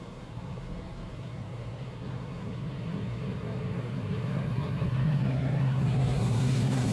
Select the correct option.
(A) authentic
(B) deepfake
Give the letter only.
B